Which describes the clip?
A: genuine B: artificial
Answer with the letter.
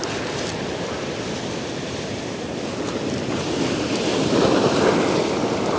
A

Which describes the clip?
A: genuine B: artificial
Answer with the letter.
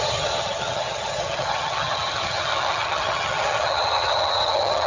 B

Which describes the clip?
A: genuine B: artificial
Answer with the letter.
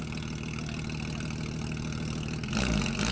A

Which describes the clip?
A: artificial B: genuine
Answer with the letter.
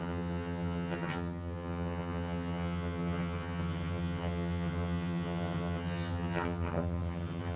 A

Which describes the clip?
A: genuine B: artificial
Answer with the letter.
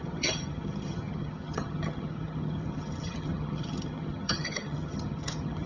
B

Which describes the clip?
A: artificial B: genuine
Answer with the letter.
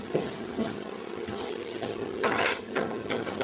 A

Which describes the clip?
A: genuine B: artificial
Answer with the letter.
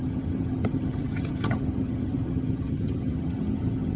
B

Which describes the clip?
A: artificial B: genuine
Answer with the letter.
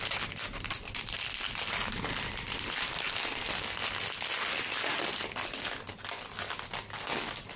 B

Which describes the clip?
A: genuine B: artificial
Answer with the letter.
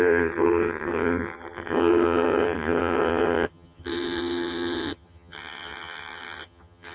B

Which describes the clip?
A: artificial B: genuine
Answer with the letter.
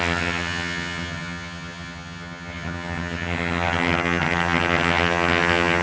A